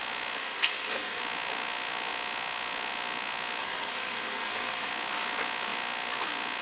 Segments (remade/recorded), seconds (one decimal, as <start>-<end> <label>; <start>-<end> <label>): 0.0-0.4 recorded; 0.4-1.2 remade; 1.2-3.6 recorded; 3.6-4.9 remade; 4.9-6.6 recorded